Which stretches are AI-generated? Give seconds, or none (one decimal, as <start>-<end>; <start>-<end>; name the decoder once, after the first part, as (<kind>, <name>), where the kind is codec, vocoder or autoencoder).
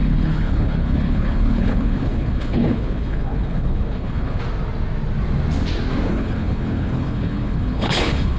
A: 0.0-4.4 (codec, HILCodec); 6.1-8.4